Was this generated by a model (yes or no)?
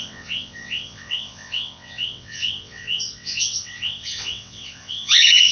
yes